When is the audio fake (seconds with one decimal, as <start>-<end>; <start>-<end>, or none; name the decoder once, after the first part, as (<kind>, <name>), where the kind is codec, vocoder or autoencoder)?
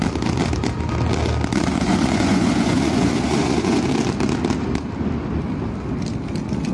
1.7-3.9 (vocoder, Vocos)